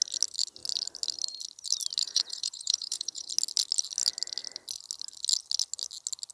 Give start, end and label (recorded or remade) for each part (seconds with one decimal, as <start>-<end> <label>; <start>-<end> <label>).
0.0-2.0 recorded; 2.0-3.3 remade; 3.3-6.3 recorded